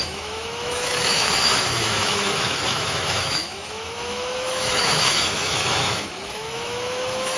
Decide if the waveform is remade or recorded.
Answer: remade